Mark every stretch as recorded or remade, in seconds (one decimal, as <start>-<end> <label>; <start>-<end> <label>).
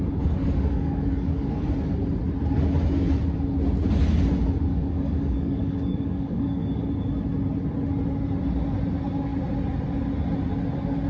0.0-0.4 recorded; 0.4-1.7 remade; 1.7-4.7 recorded; 4.7-6.9 remade; 6.9-11.1 recorded